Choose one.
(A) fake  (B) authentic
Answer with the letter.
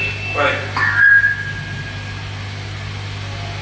B